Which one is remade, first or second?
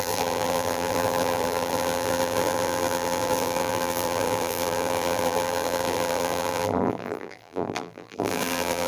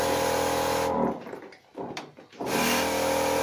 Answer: first